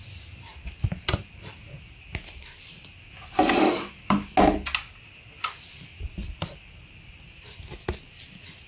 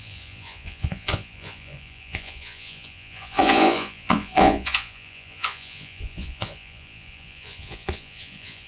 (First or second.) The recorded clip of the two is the first